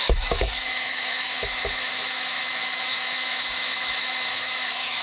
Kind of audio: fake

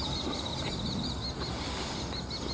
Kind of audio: real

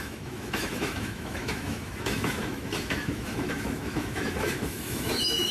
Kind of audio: fake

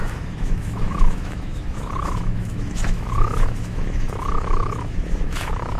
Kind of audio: fake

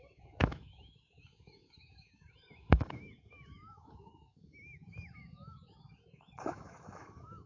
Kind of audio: fake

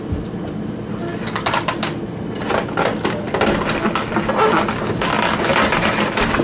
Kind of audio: real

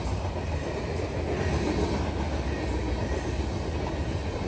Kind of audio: real